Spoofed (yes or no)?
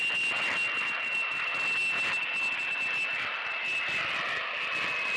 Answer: no